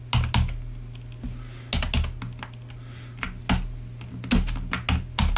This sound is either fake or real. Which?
real